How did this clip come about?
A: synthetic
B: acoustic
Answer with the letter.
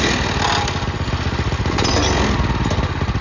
B